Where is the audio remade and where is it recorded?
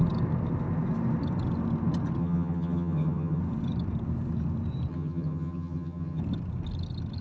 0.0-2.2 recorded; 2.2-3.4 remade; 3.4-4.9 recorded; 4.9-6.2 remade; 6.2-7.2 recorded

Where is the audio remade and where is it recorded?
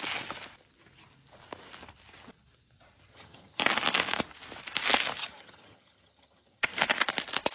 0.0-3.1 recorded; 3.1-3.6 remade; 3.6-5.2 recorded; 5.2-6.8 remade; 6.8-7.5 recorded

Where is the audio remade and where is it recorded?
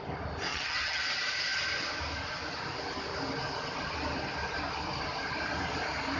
0.0-0.5 recorded; 0.5-1.0 remade; 1.0-6.2 recorded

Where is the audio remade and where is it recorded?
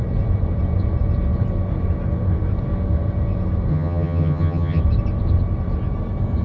0.0-3.7 recorded; 3.7-4.8 remade; 4.8-6.4 recorded